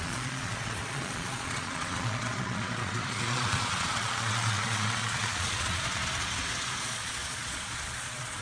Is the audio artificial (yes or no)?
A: yes